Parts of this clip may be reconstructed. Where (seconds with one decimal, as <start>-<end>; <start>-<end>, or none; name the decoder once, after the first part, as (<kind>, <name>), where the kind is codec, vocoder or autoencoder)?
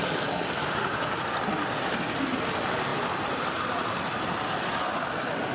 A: none